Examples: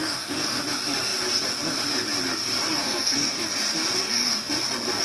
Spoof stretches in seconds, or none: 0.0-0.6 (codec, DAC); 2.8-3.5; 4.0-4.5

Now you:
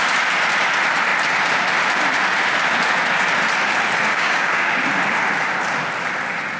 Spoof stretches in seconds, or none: 4.1-4.8 (codec, DAC)

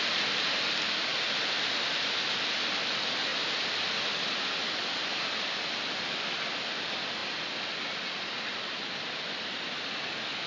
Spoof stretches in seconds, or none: none

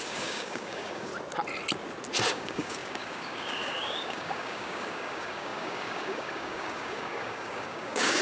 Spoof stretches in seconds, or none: 0.0-1.1 (codec, DAC); 2.3-8.2